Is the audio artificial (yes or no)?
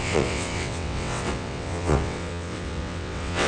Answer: yes